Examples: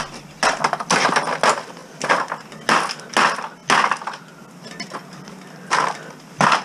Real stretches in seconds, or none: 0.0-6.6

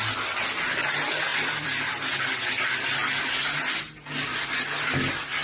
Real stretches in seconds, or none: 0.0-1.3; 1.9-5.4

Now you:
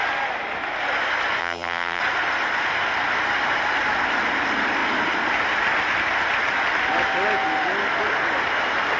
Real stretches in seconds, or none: 0.0-1.4; 2.0-9.0